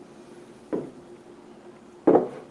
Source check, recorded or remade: recorded